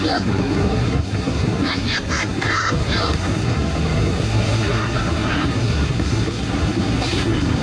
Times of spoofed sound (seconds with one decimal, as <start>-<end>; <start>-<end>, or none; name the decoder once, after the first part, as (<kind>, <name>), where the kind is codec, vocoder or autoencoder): 0.0-7.6 (codec, SNAC)